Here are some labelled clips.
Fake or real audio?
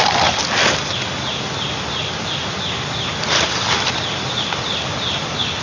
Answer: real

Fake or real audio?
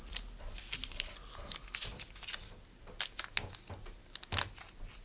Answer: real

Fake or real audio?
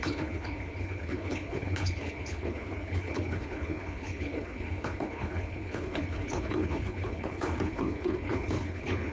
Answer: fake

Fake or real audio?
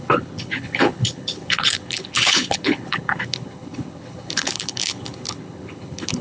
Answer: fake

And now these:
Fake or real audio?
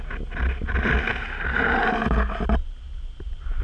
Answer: real